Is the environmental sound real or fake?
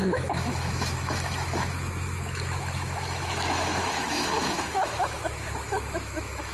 fake